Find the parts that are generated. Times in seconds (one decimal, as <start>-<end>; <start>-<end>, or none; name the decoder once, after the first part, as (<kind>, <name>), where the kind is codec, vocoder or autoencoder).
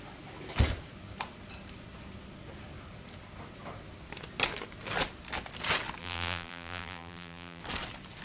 6.0-7.6 (vocoder, BigVGAN v2)